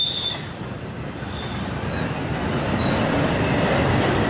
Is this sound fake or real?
real